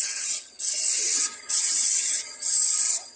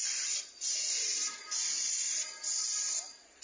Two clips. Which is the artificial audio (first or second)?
first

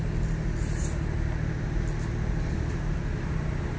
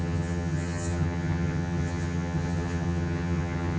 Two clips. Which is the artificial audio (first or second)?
second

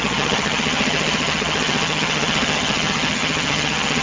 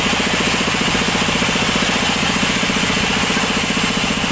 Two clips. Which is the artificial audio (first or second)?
first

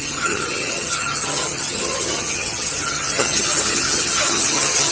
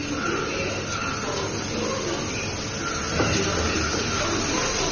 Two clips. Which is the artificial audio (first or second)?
first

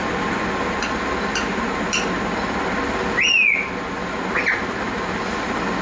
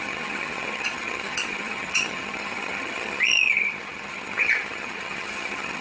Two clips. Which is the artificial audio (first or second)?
second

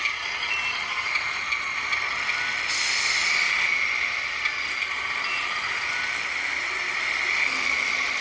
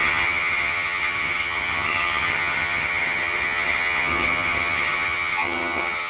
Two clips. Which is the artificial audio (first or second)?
second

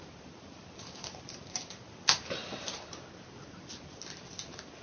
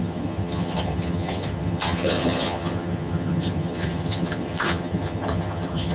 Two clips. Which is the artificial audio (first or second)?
second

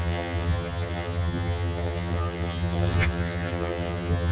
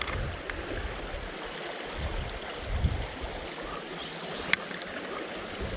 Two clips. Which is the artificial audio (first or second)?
first